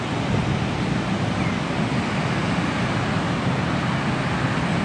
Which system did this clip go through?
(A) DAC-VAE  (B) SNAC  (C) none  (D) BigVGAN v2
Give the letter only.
C